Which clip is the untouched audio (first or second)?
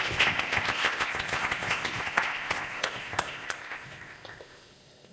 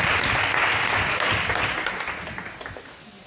second